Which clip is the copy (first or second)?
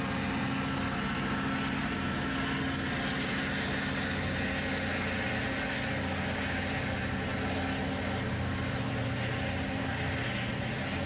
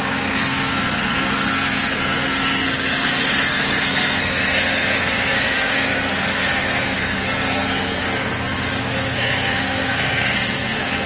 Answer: second